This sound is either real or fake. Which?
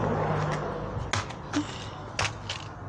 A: real